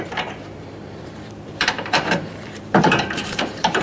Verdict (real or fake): fake